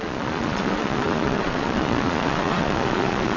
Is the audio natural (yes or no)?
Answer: no